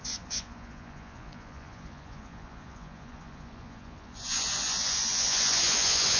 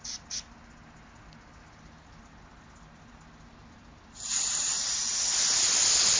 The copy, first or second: first